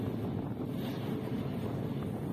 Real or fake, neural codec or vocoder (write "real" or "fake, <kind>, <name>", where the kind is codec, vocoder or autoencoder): real